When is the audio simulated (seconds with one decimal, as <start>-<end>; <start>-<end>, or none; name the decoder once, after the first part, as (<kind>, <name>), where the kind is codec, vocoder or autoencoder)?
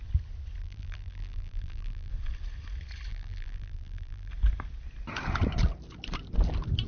0.6-2.1 (vocoder, BigVGAN v2); 3.1-4.3